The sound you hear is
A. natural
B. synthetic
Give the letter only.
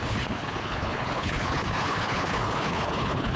B